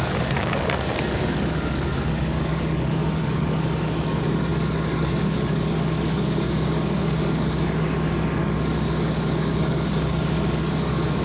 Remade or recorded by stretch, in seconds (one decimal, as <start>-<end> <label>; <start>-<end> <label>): 0.0-11.2 remade